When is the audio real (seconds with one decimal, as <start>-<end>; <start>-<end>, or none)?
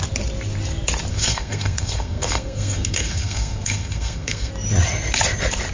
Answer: 0.0-1.1; 4.5-5.7